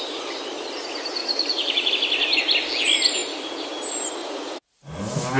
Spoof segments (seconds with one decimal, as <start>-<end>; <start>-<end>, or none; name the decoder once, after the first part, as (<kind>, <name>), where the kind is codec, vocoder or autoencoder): 1.2-1.9 (vocoder, Vocos); 4.2-5.0